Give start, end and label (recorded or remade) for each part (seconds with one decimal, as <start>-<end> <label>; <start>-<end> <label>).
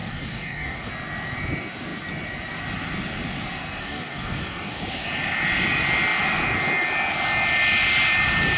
0.0-0.9 remade; 0.9-3.8 recorded; 3.8-4.8 remade; 4.8-8.6 recorded